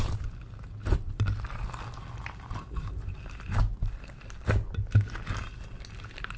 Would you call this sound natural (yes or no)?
yes